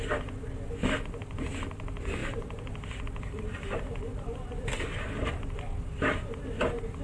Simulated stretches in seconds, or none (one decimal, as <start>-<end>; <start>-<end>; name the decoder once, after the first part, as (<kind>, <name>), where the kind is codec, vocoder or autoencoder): 2.2-6.4 (vocoder, BigVGAN v2)